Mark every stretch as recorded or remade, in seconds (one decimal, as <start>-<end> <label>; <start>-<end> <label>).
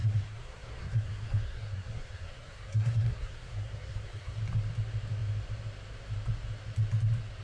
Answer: 0.0-4.4 remade; 4.4-7.4 recorded